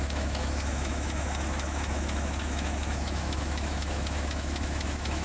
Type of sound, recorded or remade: remade